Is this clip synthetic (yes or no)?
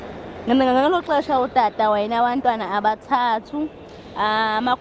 no